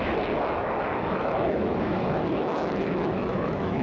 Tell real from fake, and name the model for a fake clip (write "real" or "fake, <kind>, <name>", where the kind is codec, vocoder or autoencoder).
fake, autoencoder, DAC-VAE